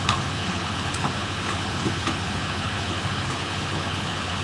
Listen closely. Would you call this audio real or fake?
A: fake